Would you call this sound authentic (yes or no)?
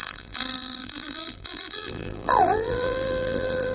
no